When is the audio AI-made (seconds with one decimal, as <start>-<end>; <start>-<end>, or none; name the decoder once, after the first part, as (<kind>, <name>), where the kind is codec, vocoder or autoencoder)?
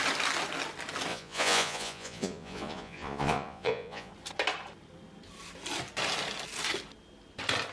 1.1-4.1 (vocoder, Vocos)